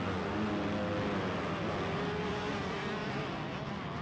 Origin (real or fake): real